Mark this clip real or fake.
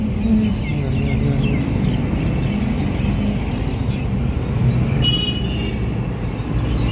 real